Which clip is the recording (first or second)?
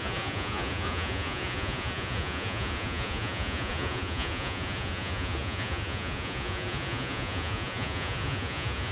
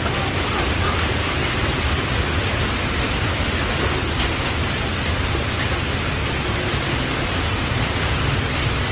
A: second